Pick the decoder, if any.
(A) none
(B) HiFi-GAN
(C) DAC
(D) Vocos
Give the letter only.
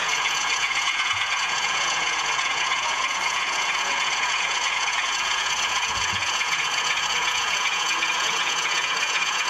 D